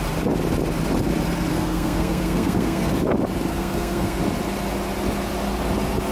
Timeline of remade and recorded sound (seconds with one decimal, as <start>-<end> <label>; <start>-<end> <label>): 0.0-1.5 recorded; 1.5-2.9 remade; 2.9-3.5 recorded; 3.5-4.2 remade; 4.2-6.1 recorded